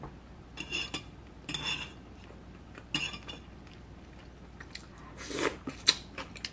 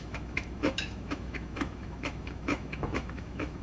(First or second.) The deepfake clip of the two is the second